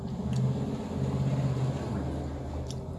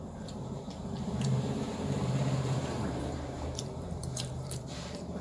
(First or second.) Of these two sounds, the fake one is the second